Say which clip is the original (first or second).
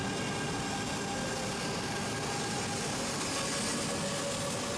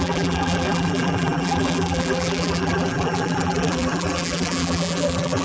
first